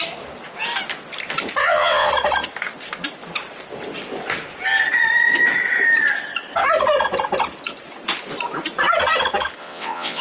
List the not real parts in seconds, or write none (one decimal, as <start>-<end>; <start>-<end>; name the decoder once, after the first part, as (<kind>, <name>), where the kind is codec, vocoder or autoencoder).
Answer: 1.6-2.1 (vocoder, WaveNeXt); 9.6-10.2